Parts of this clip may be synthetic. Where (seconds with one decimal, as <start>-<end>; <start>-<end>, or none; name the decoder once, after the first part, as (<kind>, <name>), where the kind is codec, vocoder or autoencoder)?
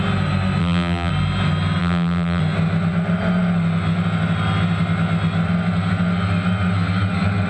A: 0.6-1.1 (vocoder, BigVGAN v2); 1.8-2.4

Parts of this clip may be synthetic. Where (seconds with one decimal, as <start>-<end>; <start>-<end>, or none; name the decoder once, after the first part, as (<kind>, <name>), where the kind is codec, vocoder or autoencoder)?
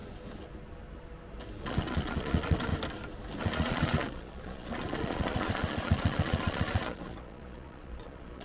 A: 1.6-2.7 (vocoder, Vocos); 3.4-8.4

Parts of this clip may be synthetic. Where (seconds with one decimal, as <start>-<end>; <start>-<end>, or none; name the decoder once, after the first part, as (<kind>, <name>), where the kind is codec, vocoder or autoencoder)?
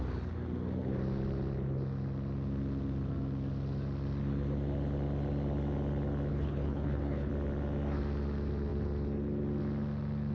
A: 6.3-7.3 (codec, HILCodec)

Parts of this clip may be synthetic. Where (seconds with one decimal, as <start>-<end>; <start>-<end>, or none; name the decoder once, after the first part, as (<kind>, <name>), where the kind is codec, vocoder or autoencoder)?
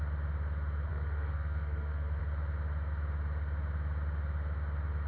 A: 0.9-2.2 (codec, SNAC)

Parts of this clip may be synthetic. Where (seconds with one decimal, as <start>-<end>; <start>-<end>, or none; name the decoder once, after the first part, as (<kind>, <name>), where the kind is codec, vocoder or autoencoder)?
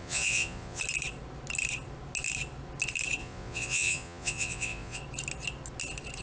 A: 0.0-0.8 (vocoder, Vocos); 3.2-5.0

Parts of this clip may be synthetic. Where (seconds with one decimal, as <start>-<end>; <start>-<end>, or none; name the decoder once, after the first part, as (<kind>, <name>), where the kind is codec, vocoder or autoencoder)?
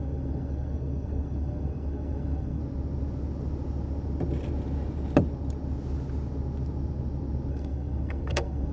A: 0.0-2.6 (codec, SNAC); 7.5-8.7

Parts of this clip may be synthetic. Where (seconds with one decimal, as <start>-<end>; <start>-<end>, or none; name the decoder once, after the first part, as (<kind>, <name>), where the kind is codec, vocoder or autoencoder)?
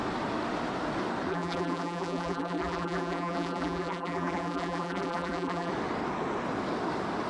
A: 1.3-5.7 (vocoder, BigVGAN v2)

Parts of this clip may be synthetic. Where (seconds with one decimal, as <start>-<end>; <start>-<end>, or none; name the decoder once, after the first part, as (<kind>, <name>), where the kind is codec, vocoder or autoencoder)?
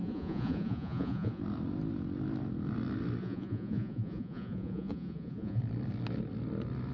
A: 0.0-1.4 (vocoder, Vocos); 3.2-5.6